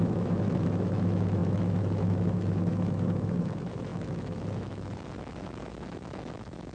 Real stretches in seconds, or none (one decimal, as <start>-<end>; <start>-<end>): none